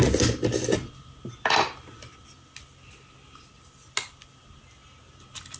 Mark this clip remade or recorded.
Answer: recorded